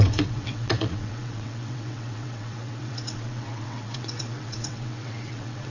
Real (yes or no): no